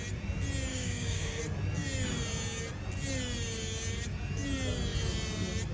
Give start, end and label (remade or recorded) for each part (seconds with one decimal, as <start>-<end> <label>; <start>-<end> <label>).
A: 0.0-0.7 recorded; 0.7-1.4 remade; 1.4-5.7 recorded